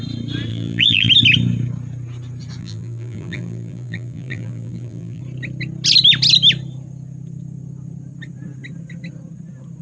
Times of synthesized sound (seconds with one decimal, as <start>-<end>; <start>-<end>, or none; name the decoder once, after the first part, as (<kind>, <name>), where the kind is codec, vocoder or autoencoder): 0.5-1.1 (vocoder, BigVGAN v2); 2.6-5.2